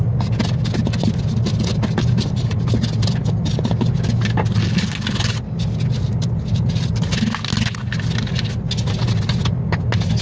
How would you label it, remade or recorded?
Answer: recorded